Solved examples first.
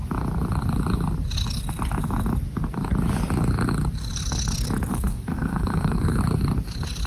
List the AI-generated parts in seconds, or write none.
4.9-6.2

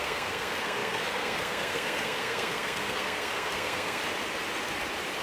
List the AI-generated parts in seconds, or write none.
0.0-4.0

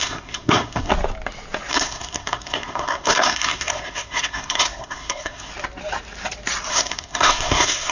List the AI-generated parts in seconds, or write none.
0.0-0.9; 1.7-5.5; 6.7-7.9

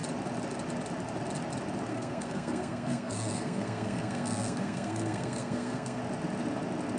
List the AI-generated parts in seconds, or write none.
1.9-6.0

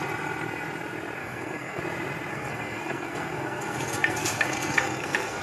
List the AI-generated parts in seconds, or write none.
1.2-1.8; 2.3-5.4

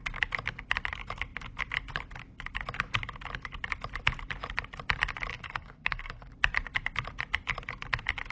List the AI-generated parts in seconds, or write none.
5.3-6.3